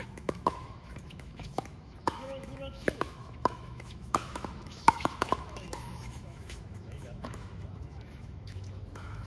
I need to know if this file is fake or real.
fake